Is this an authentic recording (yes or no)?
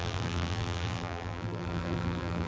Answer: no